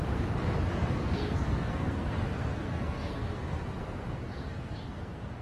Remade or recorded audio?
remade